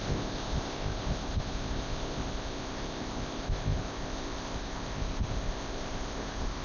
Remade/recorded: remade